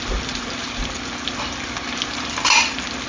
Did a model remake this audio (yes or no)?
no